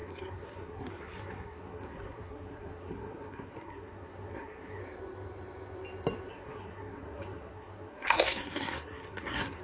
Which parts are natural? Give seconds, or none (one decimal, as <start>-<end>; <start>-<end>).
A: 4.8-6.3